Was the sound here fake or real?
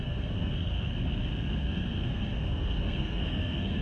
fake